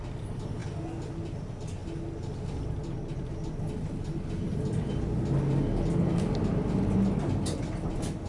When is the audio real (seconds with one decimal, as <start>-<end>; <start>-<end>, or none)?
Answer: 0.0-8.3